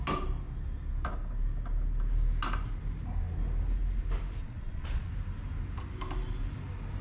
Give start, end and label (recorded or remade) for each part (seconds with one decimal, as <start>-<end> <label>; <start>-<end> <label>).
0.0-4.4 recorded; 4.4-5.1 remade; 5.1-7.0 recorded